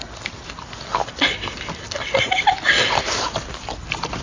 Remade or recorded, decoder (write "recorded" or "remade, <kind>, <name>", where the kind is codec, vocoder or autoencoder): recorded